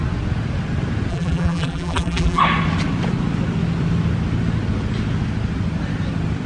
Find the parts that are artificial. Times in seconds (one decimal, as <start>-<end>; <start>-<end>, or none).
1.1-2.4